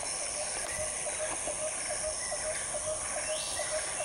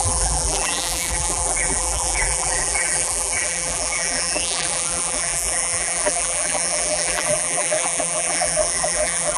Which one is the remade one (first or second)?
second